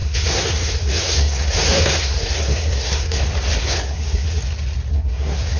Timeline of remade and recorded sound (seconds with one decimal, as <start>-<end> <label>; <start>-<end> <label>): 0.0-3.2 remade; 3.2-3.6 recorded; 3.6-4.4 remade; 4.4-4.9 recorded; 4.9-5.6 remade